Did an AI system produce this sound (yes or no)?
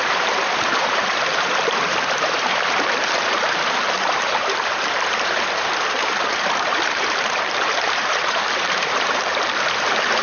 yes